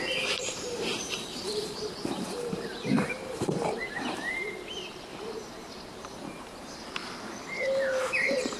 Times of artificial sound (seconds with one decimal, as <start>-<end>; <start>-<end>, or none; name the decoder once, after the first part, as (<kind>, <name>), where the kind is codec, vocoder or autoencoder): 0.0-7.0 (vocoder, BigVGAN v2); 8.2-8.6